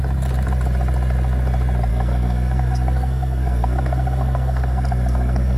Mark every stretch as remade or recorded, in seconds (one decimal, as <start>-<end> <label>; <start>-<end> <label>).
0.0-1.9 recorded; 1.9-5.6 remade